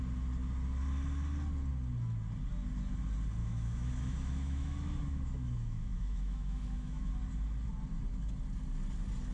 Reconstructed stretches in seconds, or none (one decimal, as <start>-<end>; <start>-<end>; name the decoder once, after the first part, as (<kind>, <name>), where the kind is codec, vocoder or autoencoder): 3.4-7.1 (autoencoder, DAC-VAE)